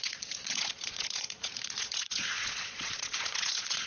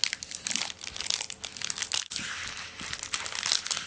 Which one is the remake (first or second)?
first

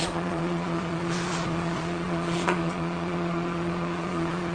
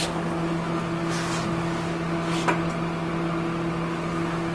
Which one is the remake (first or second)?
first